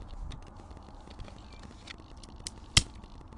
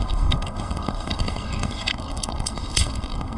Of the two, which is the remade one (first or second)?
second